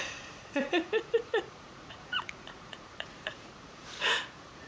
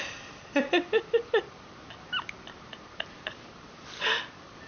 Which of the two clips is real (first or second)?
second